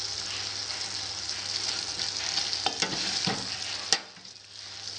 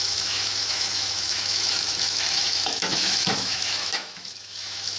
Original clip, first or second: first